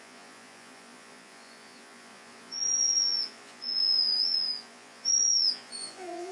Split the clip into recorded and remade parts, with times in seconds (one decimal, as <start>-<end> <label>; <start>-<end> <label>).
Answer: 0.0-6.3 remade